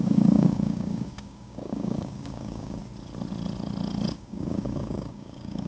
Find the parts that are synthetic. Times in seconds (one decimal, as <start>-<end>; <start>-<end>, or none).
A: 0.0-2.8; 4.1-5.7